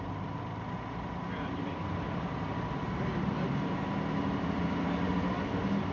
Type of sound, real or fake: real